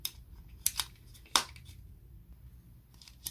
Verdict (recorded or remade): recorded